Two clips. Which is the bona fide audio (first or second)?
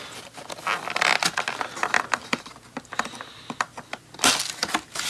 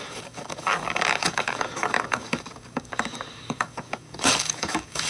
first